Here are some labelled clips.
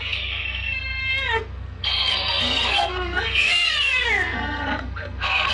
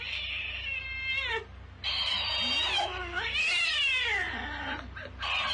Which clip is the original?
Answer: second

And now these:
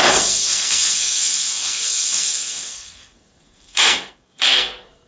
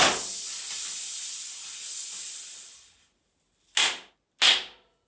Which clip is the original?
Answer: second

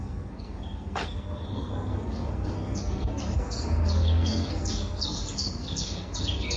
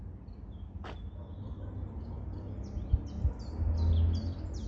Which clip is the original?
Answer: second